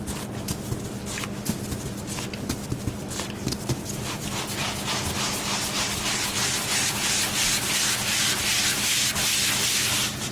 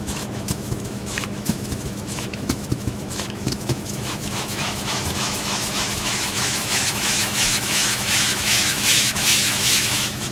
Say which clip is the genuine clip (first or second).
first